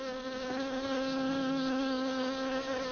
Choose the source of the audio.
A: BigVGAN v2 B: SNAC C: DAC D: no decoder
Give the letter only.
C